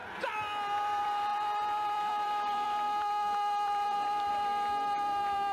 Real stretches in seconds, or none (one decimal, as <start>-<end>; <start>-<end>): 0.0-0.8